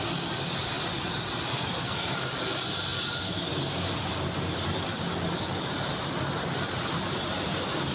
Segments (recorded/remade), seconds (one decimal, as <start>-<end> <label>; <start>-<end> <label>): 0.0-1.5 recorded; 1.5-2.1 remade; 2.1-7.9 recorded